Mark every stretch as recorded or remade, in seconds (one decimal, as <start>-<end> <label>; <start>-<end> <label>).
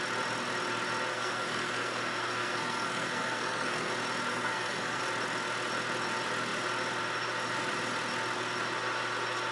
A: 0.0-1.1 recorded; 1.1-3.9 remade; 3.9-4.3 recorded; 4.3-5.0 remade; 5.0-9.5 recorded